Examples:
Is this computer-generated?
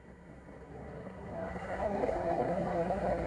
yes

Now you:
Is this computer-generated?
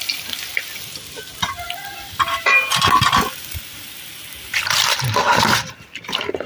no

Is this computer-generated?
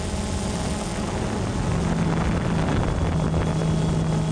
no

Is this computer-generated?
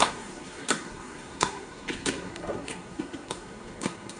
yes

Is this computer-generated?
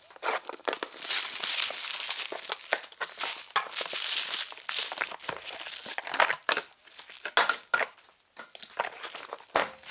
no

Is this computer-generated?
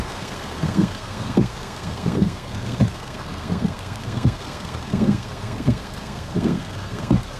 yes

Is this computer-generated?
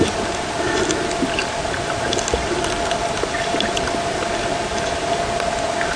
no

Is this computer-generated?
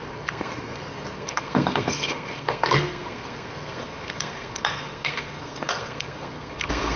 yes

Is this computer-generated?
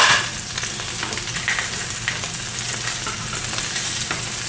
no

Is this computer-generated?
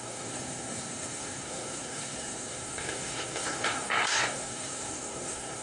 yes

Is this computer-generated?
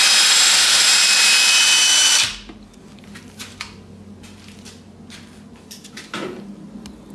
no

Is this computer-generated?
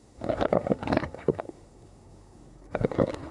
yes